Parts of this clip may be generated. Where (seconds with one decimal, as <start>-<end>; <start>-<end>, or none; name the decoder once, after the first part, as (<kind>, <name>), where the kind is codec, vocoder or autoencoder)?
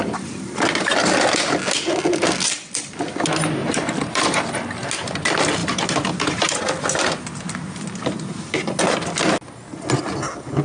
3.6-4.6 (vocoder, BigVGAN v2); 5.6-6.6